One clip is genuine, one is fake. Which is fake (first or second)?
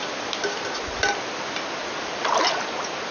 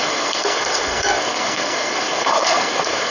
second